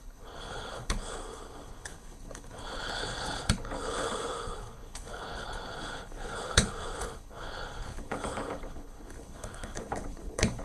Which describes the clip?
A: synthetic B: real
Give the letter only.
A